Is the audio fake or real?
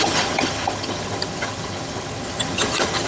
fake